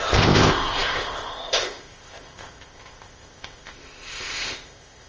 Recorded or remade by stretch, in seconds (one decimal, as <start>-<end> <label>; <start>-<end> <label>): 0.0-5.1 remade